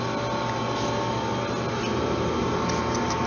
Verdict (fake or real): real